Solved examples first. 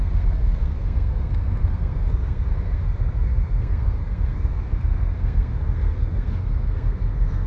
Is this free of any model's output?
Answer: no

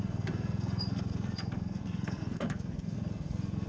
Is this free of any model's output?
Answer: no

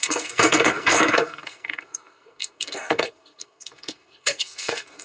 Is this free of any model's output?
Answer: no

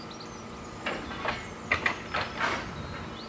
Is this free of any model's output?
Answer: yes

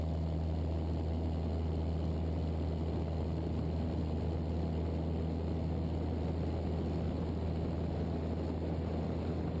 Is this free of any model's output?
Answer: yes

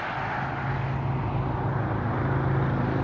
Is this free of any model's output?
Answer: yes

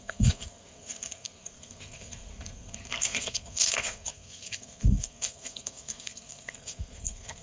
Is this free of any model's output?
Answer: no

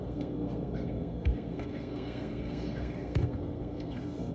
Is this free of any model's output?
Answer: no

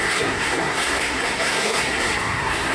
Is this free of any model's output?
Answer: no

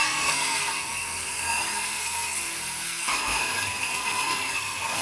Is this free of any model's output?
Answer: no